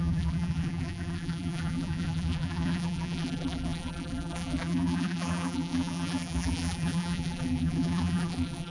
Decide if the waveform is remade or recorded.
remade